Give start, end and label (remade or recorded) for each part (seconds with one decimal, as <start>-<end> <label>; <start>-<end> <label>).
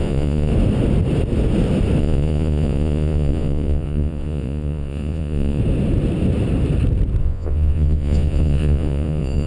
0.0-0.5 remade; 0.5-2.0 recorded; 2.0-5.6 remade; 5.6-7.2 recorded; 7.2-9.5 remade